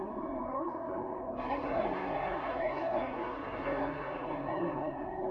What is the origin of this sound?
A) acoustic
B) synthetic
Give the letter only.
B